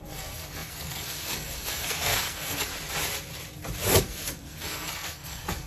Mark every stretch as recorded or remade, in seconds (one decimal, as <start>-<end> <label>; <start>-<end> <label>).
0.0-2.7 remade; 2.7-4.0 recorded; 4.0-5.7 remade